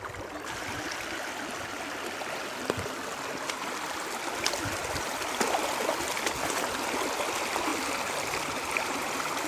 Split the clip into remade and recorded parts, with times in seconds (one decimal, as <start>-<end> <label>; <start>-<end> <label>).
0.0-9.5 recorded